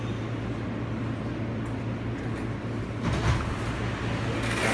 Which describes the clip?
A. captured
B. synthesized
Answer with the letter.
A